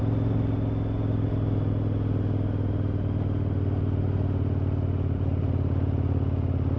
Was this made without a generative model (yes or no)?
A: yes